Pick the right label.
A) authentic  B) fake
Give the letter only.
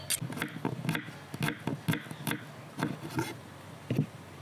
A